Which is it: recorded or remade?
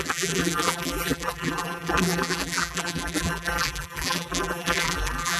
remade